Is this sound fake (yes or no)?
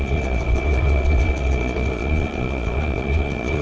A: yes